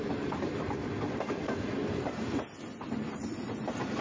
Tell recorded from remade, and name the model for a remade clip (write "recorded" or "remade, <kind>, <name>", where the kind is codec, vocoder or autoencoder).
recorded